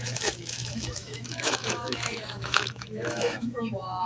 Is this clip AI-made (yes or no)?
yes